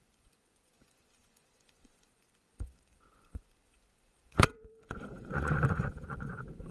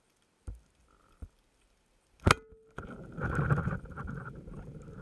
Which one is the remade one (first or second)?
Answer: first